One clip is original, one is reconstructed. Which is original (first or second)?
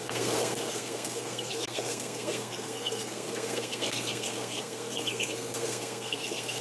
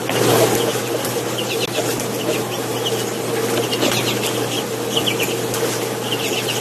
second